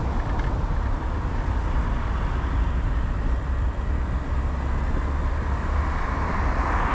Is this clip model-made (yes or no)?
no